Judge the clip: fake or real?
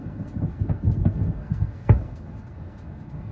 fake